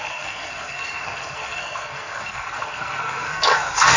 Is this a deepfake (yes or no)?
yes